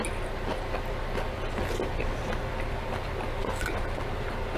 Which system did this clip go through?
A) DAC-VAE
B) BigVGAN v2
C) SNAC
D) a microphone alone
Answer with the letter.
D